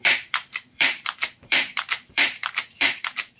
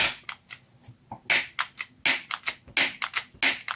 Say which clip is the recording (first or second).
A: second